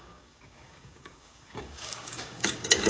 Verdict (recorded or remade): remade